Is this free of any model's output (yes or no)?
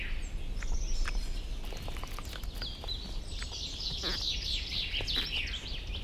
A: yes